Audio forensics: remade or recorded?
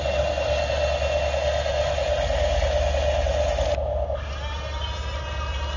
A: recorded